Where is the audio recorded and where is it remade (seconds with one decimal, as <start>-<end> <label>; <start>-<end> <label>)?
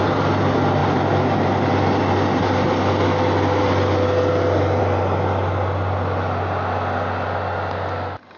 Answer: 0.0-8.4 recorded